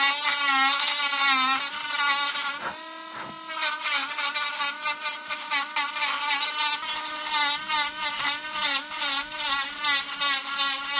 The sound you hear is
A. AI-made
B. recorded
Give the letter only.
B